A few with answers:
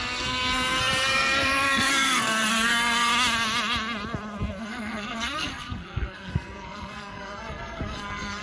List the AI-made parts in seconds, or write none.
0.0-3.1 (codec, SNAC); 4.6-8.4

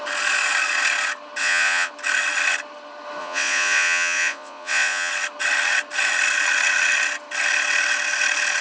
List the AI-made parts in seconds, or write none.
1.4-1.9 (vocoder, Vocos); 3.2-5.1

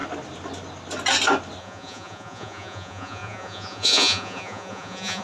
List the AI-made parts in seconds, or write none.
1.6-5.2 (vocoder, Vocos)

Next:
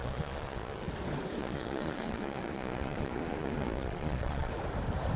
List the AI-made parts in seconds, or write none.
0.0-0.9 (vocoder, Vocos); 1.4-4.5

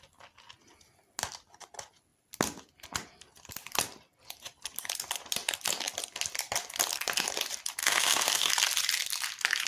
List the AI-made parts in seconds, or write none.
7.8-8.5 (autoencoder, DAC-VAE)